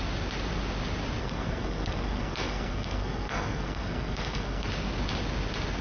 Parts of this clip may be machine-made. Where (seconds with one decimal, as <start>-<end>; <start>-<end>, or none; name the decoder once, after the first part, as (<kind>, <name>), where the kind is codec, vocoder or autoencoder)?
1.2-4.7 (codec, SNAC)

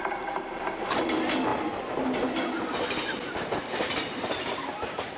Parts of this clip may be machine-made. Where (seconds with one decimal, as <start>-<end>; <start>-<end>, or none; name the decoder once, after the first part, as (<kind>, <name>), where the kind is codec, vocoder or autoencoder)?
none

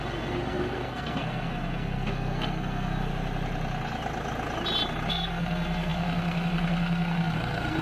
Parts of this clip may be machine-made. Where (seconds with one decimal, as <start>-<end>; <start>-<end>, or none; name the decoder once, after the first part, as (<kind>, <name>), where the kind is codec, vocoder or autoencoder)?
0.0-3.1 (codec, SNAC); 5.1-7.8

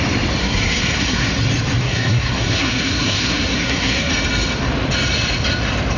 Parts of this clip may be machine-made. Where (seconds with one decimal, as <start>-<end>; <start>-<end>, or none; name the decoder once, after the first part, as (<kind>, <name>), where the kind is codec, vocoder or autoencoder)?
0.4-1.3 (codec, SNAC); 1.8-4.1

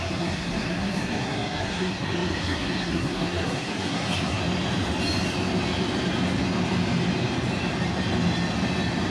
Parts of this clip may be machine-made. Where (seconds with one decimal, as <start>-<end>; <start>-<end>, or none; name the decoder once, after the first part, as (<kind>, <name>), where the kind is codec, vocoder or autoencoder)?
0.0-4.4 (codec, SNAC)

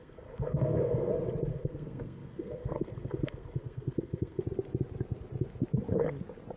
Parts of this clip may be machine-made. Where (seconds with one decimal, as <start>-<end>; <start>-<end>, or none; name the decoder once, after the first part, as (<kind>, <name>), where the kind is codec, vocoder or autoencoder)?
0.0-1.1 (codec, SNAC); 1.5-4.4

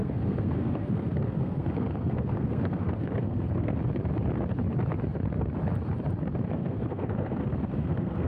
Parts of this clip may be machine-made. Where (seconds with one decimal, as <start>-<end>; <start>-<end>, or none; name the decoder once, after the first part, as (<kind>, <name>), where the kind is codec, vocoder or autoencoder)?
0.0-3.8 (codec, SNAC); 6.5-8.3

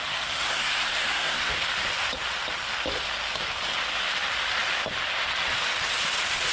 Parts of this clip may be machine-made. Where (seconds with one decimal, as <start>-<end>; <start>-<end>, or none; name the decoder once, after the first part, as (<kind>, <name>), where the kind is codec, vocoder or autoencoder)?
0.0-1.5 (codec, SNAC)